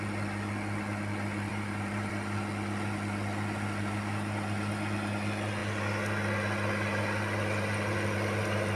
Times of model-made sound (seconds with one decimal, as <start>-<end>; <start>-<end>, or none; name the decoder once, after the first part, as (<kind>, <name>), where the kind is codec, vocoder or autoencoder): 1.5-2.1 (vocoder, BigVGAN v2)